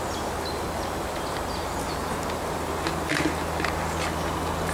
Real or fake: real